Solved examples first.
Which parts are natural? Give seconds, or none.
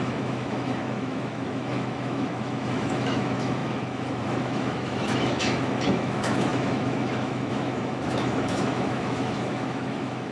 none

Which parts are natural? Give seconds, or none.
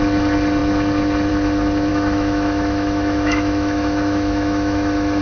0.0-1.9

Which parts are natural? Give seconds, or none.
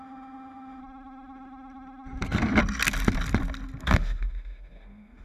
0.8-3.8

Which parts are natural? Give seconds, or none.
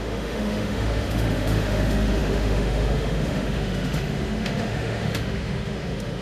none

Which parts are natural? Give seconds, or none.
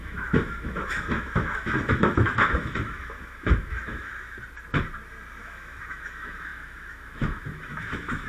4.1-5.4